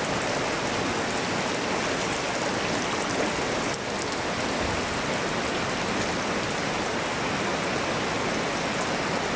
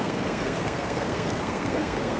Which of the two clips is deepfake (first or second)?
second